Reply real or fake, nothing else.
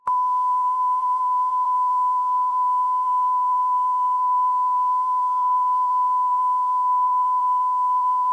fake